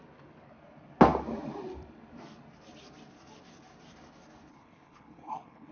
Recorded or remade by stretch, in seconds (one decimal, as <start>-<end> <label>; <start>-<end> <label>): 0.0-4.5 recorded; 4.5-5.7 remade